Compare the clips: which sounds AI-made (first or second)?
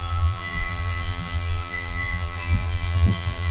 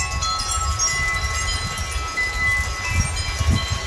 first